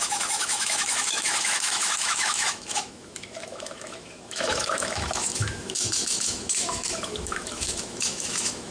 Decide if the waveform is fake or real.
fake